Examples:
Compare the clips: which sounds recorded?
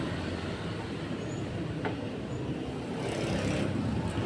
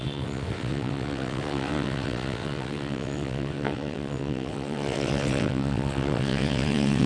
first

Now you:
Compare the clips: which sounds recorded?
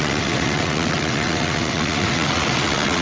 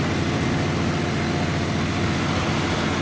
second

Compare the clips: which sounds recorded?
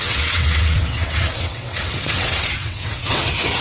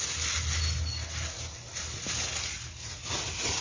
second